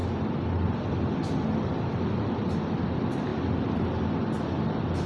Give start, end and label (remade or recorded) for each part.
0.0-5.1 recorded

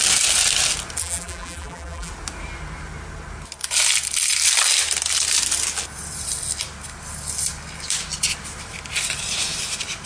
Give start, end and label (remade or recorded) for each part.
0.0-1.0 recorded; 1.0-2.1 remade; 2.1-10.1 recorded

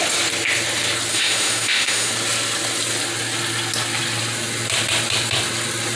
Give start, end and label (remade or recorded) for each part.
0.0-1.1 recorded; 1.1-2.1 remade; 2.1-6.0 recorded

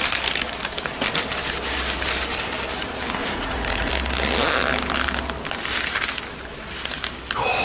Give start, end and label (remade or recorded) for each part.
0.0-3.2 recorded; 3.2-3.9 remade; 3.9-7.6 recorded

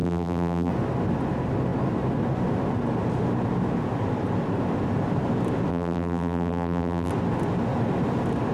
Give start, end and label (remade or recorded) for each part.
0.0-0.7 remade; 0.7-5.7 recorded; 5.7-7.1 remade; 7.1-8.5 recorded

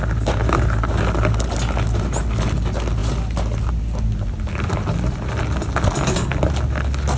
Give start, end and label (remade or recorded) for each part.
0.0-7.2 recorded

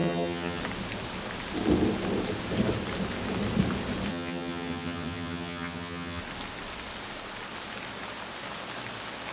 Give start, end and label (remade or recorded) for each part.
0.0-0.6 remade; 0.6-4.1 recorded; 4.1-6.2 remade; 6.2-9.3 recorded